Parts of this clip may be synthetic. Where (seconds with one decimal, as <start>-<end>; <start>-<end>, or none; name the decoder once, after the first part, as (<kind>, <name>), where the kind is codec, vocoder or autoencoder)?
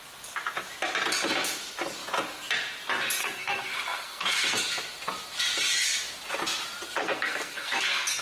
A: 3.2-4.6 (codec, SNAC); 7.0-8.2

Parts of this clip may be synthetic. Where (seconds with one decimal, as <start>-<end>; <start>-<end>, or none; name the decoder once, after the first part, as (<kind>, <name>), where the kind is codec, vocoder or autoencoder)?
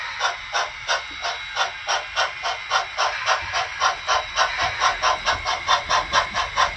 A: none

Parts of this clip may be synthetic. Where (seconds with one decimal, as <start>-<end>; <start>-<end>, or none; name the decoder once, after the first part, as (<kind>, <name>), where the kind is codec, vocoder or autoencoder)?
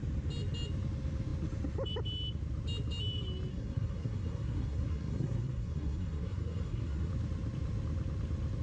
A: 3.5-7.1 (codec, SNAC)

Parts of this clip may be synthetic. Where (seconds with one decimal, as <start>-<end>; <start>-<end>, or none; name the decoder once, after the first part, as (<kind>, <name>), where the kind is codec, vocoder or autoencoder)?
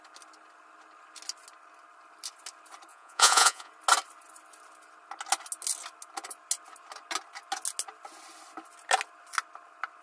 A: 2.9-3.7 (vocoder, Vocos)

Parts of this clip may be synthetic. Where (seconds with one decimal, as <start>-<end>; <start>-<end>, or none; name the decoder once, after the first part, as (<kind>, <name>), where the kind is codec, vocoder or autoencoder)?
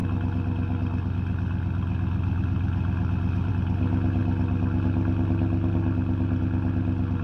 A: none